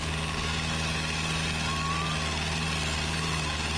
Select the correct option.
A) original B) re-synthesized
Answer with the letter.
A